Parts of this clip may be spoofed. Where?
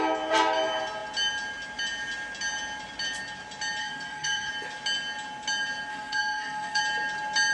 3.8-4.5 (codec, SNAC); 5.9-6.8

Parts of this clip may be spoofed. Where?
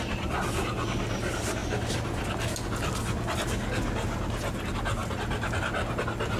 none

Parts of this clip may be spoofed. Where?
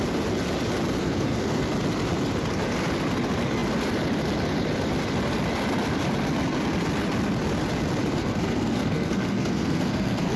1.0-1.6 (codec, SNAC); 8.2-10.4